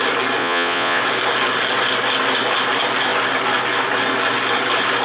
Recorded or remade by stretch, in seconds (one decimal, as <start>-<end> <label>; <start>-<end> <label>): 0.0-0.4 recorded; 0.4-1.0 remade; 1.0-5.0 recorded